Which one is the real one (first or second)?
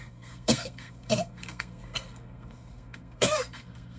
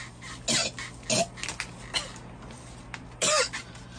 second